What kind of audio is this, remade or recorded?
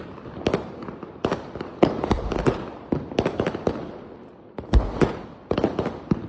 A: remade